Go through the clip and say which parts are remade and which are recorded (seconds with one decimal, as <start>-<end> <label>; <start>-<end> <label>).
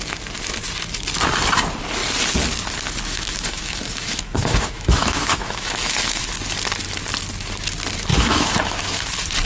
0.0-3.1 recorded; 3.1-6.3 remade; 6.3-8.1 recorded; 8.1-9.0 remade; 9.0-9.5 recorded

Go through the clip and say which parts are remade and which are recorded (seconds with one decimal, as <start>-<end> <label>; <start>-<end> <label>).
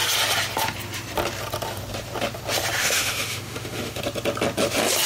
0.0-2.8 recorded; 2.8-4.0 remade; 4.0-5.1 recorded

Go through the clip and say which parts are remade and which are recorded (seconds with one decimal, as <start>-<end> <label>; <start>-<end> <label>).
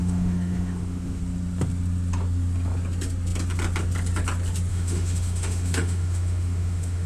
0.0-1.2 remade; 1.2-4.7 recorded; 4.7-7.1 remade